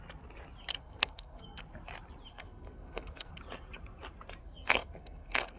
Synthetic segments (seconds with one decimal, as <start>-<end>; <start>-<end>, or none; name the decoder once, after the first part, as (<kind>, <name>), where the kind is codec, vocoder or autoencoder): 0.7-1.6 (codec, SNAC); 2.3-3.4; 4.4-5.6